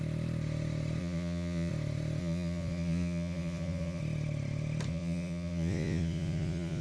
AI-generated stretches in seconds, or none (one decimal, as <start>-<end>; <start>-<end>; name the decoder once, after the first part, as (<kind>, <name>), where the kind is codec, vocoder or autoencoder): 1.0-1.7 (vocoder, Vocos); 2.2-4.0; 4.9-6.8